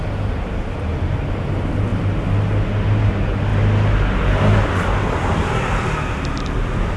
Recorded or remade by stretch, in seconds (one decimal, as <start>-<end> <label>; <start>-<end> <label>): 0.0-7.0 recorded